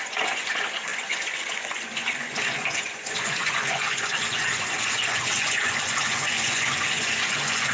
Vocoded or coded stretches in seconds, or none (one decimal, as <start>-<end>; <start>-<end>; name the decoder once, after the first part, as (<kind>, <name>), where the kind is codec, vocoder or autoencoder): 0.0-7.7 (vocoder, Vocos)